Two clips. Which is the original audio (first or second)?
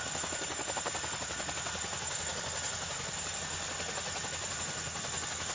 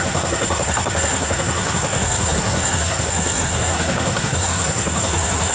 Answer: first